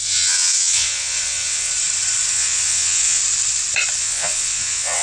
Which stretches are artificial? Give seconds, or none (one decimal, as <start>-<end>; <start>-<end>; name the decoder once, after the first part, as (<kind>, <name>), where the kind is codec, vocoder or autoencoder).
0.0-1.7 (vocoder, WaveNeXt); 2.3-3.2; 4.0-5.0